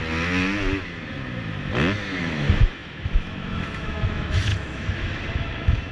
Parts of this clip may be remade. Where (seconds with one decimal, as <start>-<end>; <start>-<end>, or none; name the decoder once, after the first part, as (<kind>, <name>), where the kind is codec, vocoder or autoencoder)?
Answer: 2.2-5.9 (autoencoder, DAC-VAE)